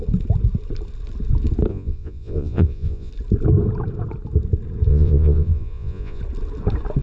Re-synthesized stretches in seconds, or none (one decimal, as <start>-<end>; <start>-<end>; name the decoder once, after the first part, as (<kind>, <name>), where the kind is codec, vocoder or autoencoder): 1.7-3.1 (vocoder, Vocos); 4.9-6.2